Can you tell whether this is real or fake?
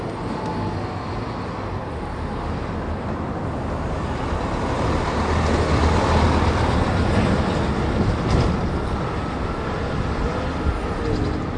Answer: real